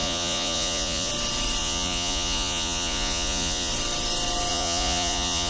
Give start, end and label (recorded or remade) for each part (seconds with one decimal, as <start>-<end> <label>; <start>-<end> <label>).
0.0-1.1 remade; 1.1-1.6 recorded; 1.6-3.7 remade; 3.7-4.5 recorded; 4.5-5.5 remade